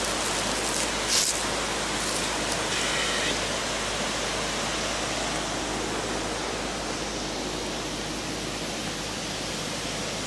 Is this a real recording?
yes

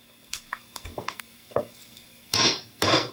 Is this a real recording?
no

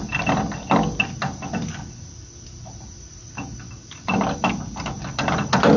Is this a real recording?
yes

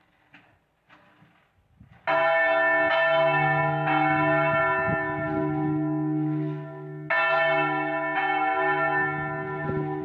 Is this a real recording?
yes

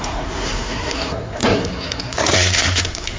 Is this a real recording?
no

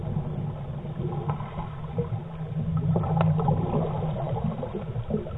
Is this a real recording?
yes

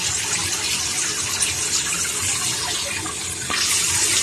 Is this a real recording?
yes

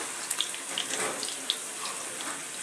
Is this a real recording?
yes